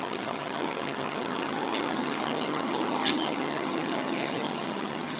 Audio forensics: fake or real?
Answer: fake